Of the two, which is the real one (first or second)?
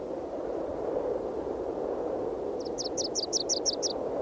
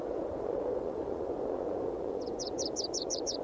first